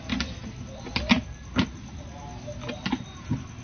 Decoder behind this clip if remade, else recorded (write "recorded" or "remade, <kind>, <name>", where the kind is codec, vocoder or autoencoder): recorded